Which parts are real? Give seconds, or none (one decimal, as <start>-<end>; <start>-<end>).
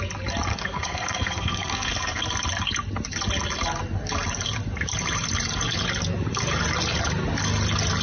0.0-0.5; 2.2-8.0